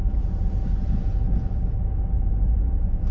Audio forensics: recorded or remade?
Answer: remade